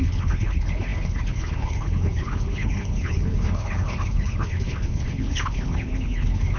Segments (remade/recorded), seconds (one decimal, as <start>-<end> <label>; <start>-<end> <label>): 0.0-6.6 remade